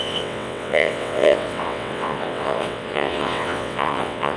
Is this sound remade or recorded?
remade